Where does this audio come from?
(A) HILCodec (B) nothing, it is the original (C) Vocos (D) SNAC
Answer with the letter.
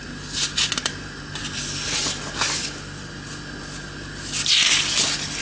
B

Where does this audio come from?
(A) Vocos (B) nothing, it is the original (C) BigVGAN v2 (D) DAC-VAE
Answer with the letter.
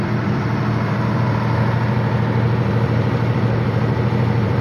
C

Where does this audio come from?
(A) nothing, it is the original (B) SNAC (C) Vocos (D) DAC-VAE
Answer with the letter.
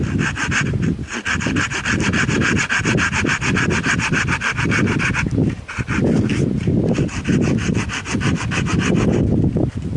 A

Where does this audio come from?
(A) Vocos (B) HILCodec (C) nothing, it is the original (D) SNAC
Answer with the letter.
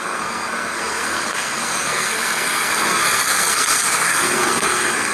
D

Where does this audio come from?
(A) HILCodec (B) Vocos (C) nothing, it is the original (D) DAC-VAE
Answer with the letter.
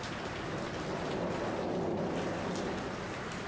C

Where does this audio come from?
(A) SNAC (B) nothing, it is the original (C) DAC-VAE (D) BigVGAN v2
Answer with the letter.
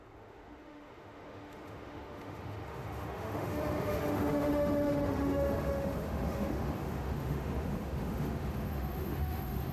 C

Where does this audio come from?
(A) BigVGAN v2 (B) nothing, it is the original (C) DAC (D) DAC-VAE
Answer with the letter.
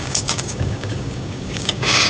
C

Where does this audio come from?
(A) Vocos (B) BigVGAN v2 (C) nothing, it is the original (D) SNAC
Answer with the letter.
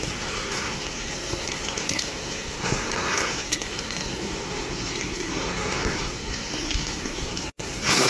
D